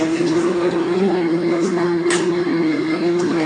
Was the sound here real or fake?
fake